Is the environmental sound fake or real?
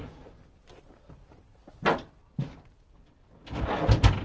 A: real